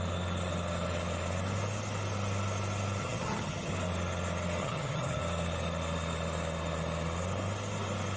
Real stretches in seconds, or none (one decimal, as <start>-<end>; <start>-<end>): 0.0-3.0; 3.7-4.6; 5.2-8.2